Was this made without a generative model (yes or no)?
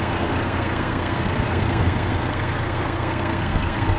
no